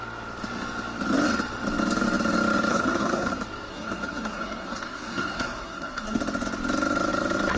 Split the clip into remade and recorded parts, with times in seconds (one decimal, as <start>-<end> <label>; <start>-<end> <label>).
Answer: 0.0-2.7 recorded; 2.7-3.3 remade; 3.3-3.7 recorded; 3.7-6.2 remade; 6.2-7.6 recorded